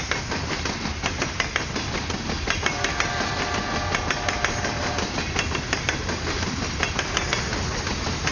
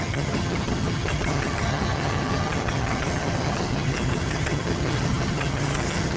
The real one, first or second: first